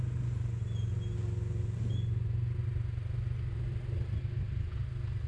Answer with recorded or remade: recorded